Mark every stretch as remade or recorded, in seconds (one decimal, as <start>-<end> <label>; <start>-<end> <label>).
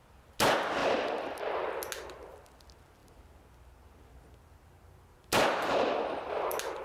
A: 0.0-0.8 recorded; 0.8-1.4 remade; 1.4-6.8 recorded